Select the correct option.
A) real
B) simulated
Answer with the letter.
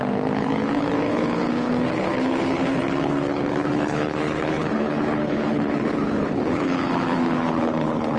B